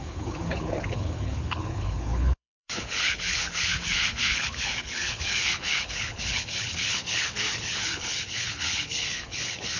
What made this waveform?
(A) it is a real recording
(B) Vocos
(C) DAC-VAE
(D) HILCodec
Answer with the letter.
D